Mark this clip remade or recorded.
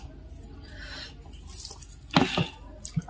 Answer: recorded